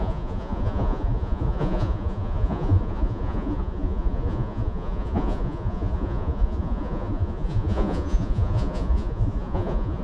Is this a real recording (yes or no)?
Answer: no